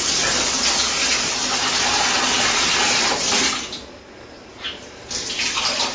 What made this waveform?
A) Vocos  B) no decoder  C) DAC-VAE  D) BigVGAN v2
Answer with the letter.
B